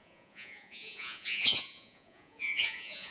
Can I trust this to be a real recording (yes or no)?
no